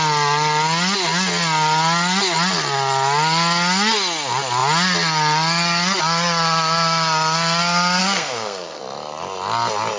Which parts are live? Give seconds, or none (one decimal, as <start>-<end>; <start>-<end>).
0.0-8.0; 8.8-10.0

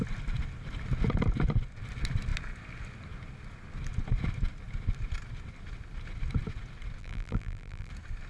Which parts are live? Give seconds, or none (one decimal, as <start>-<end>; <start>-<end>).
0.0-7.0; 7.9-8.3

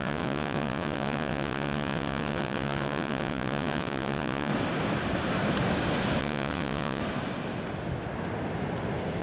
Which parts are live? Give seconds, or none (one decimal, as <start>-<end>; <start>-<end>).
4.5-6.2; 7.0-9.2

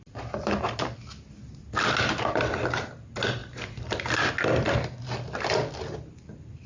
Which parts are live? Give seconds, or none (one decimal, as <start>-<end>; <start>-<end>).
0.0-3.4; 4.3-6.7

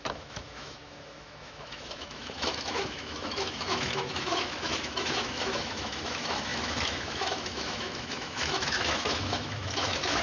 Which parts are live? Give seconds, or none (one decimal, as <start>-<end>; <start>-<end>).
none

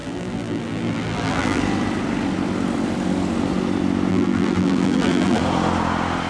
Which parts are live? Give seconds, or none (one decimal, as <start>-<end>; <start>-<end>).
1.6-4.1; 5.4-6.3